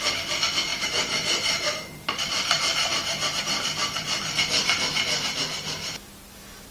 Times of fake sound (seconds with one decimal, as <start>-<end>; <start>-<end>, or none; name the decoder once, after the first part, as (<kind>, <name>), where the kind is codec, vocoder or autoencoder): 0.7-3.4 (vocoder, BigVGAN v2); 3.8-5.4